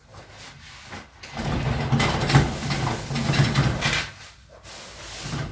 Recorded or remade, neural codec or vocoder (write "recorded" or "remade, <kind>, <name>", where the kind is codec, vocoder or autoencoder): recorded